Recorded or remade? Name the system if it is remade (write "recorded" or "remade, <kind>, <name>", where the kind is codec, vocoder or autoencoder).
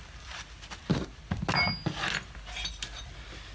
recorded